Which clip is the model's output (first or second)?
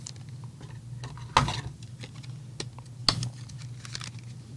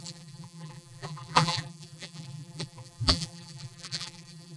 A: second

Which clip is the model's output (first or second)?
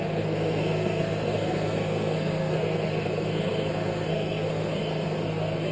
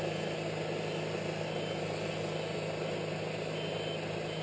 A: first